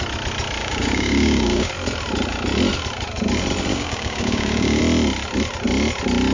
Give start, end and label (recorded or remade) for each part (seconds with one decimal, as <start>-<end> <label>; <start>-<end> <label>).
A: 0.0-0.6 recorded; 0.6-1.7 remade; 1.7-3.7 recorded; 3.7-4.8 remade; 4.8-6.3 recorded